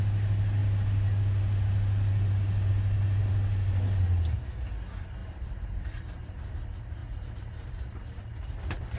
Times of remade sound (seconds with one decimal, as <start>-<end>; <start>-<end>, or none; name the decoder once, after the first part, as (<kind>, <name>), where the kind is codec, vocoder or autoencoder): none